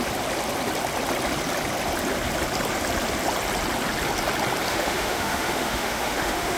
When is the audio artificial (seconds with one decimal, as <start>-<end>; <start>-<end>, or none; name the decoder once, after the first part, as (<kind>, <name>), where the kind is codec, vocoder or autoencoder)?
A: 4.7-6.6 (autoencoder, DAC-VAE)